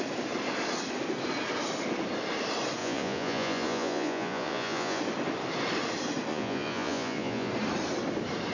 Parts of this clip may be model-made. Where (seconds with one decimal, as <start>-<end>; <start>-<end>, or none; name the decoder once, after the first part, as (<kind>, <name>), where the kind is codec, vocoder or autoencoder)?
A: 2.8-5.0 (vocoder, Vocos); 6.3-7.5